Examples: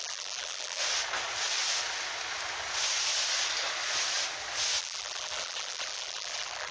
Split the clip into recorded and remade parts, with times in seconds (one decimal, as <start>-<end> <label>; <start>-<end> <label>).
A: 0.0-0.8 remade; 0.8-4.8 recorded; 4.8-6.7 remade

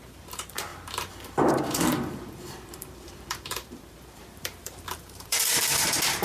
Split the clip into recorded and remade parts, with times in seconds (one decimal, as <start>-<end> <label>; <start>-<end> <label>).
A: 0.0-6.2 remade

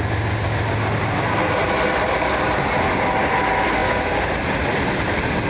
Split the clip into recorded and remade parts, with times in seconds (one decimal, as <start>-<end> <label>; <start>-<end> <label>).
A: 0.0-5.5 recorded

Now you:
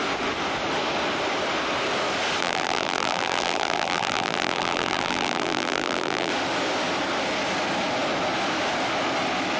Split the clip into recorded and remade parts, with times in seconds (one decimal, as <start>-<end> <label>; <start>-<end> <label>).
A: 0.0-2.4 recorded; 2.4-6.3 remade; 6.3-9.6 recorded

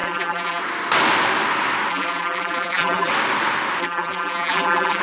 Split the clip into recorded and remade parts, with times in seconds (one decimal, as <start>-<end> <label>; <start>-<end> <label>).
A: 0.0-0.6 remade; 0.6-1.9 recorded; 1.9-3.1 remade; 3.1-3.8 recorded; 3.8-5.0 remade